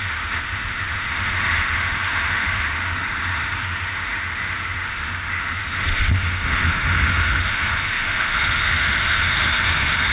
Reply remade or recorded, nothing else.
remade